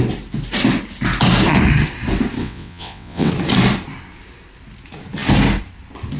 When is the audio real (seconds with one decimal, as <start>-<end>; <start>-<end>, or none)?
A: 0.0-2.4; 3.3-6.2